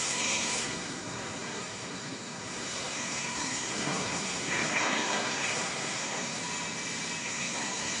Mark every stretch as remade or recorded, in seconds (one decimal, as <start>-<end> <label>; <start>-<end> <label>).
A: 0.0-6.4 remade; 6.4-7.2 recorded; 7.2-8.0 remade